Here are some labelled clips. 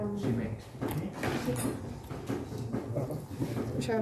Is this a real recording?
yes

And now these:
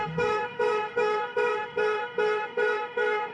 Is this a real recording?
no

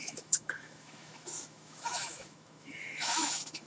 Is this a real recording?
no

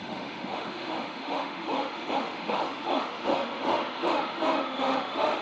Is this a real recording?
no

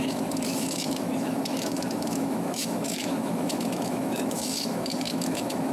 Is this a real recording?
no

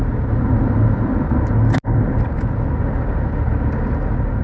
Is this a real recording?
yes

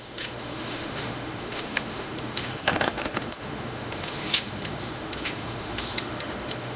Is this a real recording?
no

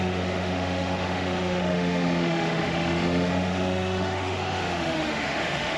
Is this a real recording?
no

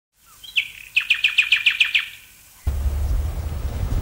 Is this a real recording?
yes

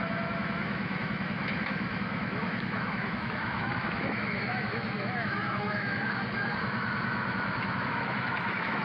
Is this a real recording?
no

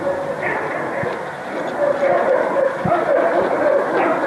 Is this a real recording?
yes